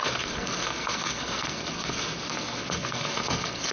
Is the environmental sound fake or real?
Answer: fake